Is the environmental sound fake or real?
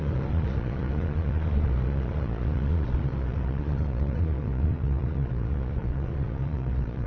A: fake